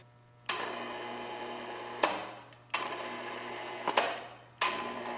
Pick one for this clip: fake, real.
real